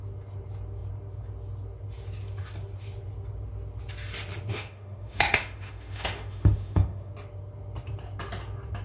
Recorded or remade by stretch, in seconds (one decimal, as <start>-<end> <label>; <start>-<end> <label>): 0.0-4.5 recorded; 4.5-7.1 remade; 7.1-8.8 recorded